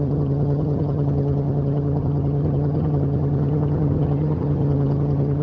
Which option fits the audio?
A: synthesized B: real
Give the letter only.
A